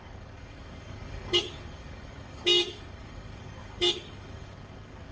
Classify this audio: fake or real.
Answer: fake